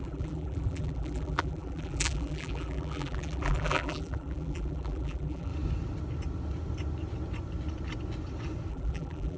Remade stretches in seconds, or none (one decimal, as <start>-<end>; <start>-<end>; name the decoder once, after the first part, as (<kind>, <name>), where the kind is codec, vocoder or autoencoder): 0.0-5.5 (vocoder, BigVGAN v2); 8.7-9.4